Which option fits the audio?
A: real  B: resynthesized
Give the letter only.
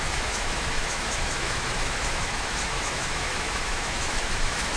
B